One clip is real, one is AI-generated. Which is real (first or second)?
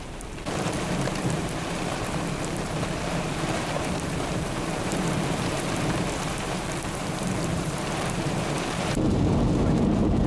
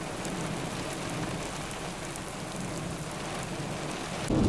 second